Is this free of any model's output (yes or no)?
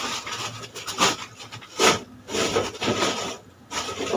yes